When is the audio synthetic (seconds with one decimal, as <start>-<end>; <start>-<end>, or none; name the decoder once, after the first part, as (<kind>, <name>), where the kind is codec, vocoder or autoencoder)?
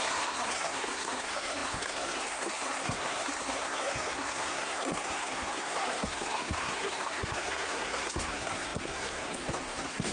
0.0-10.1 (codec, SNAC)